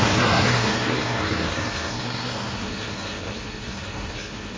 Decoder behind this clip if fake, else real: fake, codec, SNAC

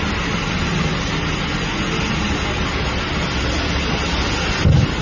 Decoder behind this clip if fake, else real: real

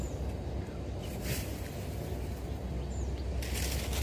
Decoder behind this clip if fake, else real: real